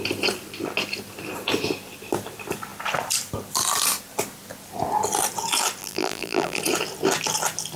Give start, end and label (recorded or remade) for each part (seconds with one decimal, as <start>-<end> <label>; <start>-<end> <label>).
0.0-5.8 recorded; 5.8-6.6 remade; 6.6-7.8 recorded

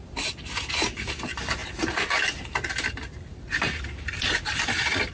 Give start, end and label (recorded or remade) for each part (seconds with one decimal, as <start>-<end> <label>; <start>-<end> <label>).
0.0-5.1 recorded

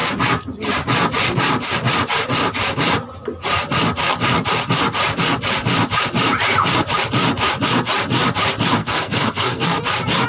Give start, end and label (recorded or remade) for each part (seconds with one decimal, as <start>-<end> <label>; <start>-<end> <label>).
0.0-8.8 recorded; 8.8-9.8 remade; 9.8-10.3 recorded

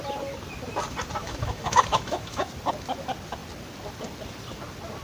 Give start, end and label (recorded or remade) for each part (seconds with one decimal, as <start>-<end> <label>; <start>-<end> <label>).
0.0-1.2 recorded; 1.2-2.5 remade; 2.5-5.0 recorded

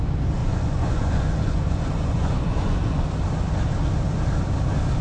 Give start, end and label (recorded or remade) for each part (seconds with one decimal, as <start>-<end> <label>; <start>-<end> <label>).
0.0-0.4 recorded; 0.4-3.0 remade; 3.0-5.0 recorded

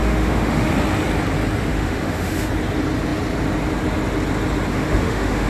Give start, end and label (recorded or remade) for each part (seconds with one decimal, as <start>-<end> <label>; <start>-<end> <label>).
0.0-0.7 remade; 0.7-1.7 recorded; 1.7-2.5 remade; 2.5-4.7 recorded; 4.7-5.5 remade

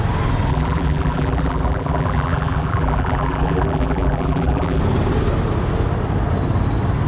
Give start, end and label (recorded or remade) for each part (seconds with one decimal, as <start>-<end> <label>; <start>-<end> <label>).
0.0-0.5 recorded; 0.5-4.8 remade; 4.8-7.1 recorded